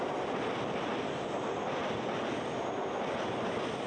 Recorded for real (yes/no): yes